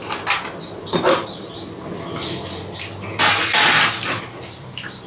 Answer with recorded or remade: recorded